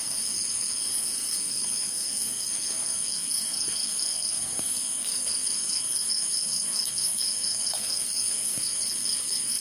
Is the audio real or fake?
fake